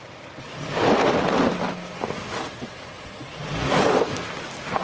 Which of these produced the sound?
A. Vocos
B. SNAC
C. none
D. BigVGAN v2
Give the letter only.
C